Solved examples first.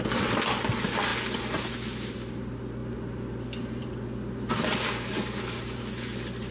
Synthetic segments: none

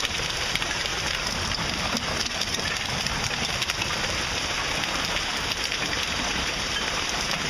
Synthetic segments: 0.0-0.9 (vocoder, BigVGAN v2); 5.2-7.5

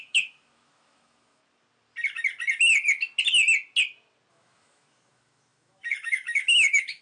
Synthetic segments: 0.0-1.4 (autoencoder, DAC-VAE); 4.3-7.0

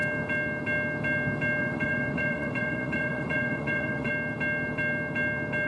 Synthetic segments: 1.6-4.1 (vocoder, Vocos)